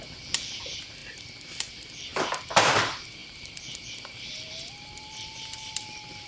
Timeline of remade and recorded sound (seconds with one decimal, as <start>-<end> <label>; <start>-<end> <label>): 0.0-1.0 recorded; 1.0-1.7 remade; 1.7-2.1 recorded; 2.1-2.7 remade; 2.7-3.2 recorded; 3.2-6.3 remade